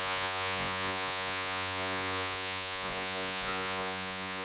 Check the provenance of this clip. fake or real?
fake